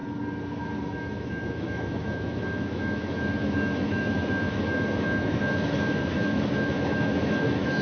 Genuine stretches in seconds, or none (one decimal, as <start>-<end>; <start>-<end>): 0.0-0.8